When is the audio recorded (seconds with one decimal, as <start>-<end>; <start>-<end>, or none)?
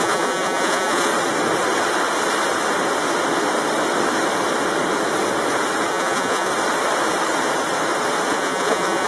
1.1-5.9; 6.5-8.3